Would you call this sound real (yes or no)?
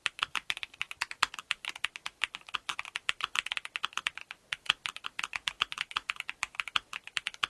yes